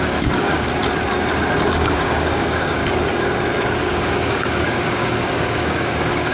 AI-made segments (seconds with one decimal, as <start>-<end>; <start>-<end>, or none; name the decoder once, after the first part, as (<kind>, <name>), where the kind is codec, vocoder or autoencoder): 0.0-0.7 (codec, DAC); 1.7-2.8; 3.8-6.3